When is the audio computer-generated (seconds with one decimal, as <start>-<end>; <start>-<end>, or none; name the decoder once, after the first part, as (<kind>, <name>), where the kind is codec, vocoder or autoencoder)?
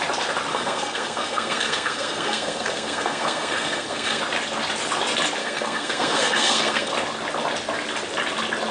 0.5-4.2 (codec, SNAC); 5.4-6.9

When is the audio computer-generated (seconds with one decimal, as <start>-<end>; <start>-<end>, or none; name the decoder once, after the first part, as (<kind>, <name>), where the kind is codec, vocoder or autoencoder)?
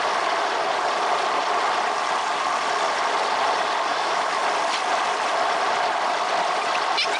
3.9-4.4 (autoencoder, DAC-VAE)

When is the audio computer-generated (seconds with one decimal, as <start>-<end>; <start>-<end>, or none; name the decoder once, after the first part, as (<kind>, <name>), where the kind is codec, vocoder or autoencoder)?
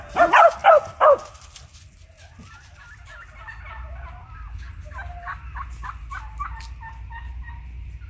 none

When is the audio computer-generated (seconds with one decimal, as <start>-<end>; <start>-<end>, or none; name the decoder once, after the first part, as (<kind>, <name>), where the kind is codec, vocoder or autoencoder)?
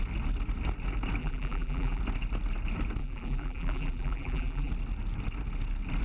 1.2-2.0 (vocoder, BigVGAN v2); 3.0-4.7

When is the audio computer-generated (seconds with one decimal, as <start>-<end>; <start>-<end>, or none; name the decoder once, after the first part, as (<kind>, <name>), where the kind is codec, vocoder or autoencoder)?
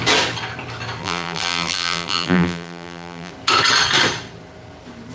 1.0-3.3 (vocoder, BigVGAN v2)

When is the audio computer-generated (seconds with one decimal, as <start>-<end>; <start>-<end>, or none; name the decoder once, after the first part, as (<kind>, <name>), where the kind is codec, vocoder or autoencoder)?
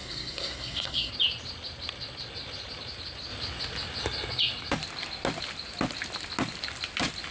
0.0-1.1 (codec, SNAC)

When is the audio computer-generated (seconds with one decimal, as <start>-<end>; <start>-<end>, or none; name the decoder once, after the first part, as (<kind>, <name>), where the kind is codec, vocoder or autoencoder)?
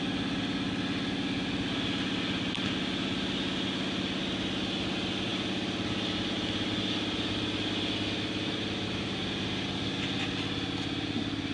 none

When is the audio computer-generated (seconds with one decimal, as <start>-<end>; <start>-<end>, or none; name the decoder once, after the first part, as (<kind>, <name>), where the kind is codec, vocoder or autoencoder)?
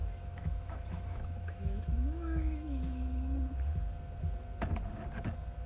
0.0-3.4 (autoencoder, DAC-VAE)